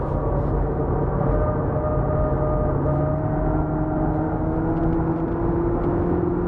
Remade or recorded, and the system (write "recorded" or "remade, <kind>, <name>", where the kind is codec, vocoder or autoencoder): recorded